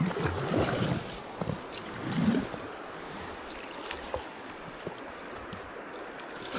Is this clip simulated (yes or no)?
no